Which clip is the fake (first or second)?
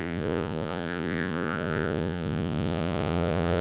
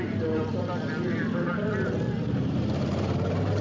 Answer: first